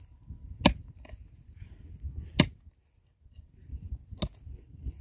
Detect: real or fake real